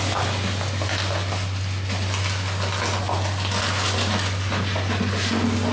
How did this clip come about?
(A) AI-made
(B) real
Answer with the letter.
B